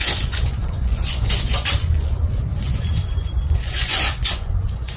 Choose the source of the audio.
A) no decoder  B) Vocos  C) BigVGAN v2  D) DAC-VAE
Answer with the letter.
B